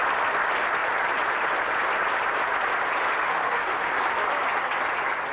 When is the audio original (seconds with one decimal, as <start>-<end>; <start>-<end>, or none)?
0.0-3.3; 3.9-5.3